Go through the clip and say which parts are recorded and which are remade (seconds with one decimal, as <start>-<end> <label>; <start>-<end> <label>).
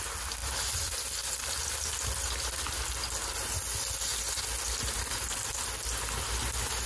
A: 0.0-6.9 recorded